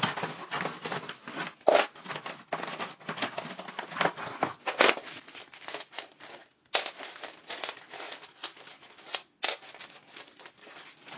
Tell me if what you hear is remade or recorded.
recorded